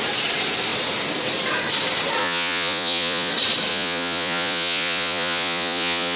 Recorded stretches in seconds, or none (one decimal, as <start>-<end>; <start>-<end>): 0.0-2.2; 3.3-3.7